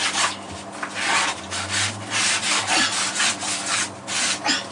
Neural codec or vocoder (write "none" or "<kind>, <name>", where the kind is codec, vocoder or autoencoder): none